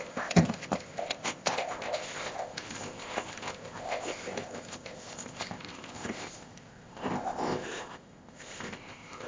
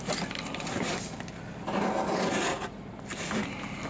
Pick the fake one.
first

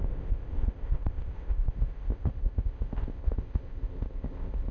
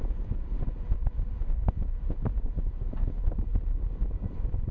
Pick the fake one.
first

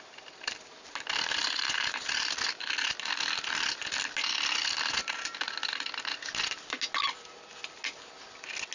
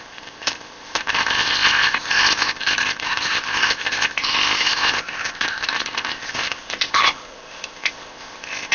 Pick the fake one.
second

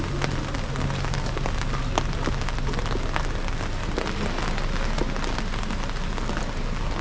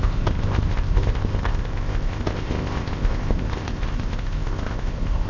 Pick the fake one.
second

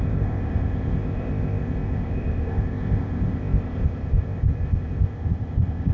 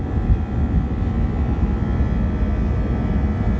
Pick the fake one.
first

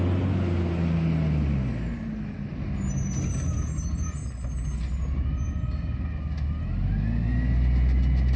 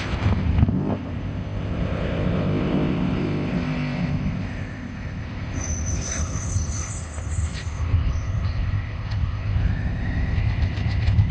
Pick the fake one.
second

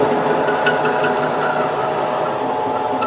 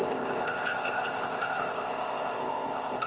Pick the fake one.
second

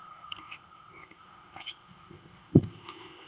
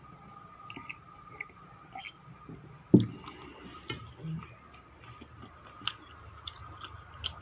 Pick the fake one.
first